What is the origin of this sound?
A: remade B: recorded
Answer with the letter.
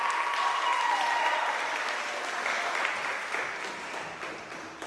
B